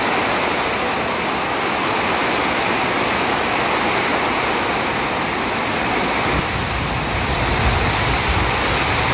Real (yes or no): yes